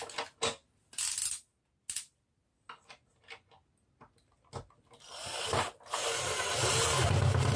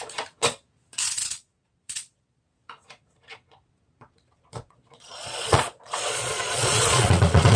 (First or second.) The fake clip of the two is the second